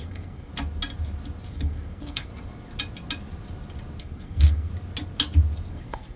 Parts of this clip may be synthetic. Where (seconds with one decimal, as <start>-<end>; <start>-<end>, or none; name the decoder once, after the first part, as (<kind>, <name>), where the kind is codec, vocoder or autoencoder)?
0.0-0.5 (codec, SNAC); 1.5-2.3; 4.0-4.7; 5.7-6.2